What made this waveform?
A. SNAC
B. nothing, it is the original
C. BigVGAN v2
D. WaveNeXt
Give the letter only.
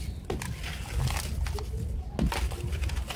B